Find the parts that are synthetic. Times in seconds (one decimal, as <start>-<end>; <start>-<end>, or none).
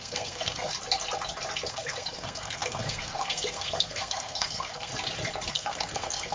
0.0-0.7; 1.7-4.9; 5.5-6.3